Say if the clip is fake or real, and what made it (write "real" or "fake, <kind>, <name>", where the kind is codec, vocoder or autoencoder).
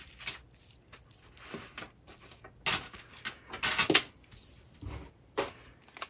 real